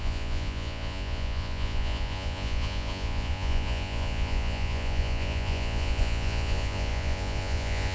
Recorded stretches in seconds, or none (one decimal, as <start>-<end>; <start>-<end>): none